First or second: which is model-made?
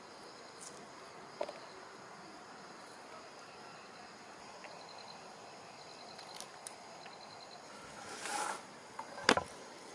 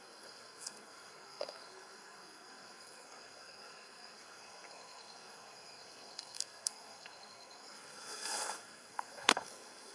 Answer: second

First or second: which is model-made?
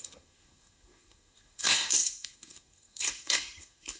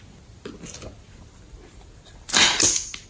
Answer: first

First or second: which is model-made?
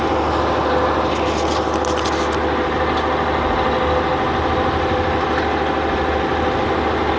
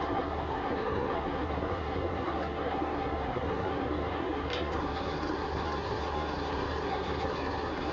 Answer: second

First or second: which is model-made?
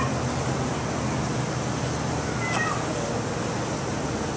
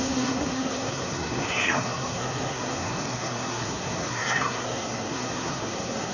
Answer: second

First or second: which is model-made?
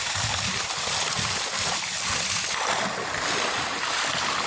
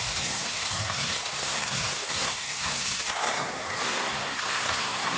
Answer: second